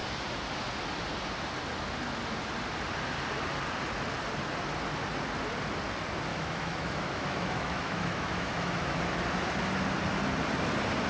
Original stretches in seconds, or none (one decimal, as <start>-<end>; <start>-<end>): 0.0-6.3; 9.0-11.1